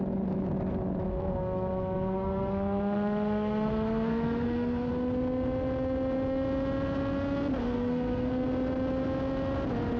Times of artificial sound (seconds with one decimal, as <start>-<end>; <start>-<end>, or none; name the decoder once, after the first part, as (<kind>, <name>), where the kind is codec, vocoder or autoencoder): 1.1-4.9 (codec, SNAC); 7.6-8.3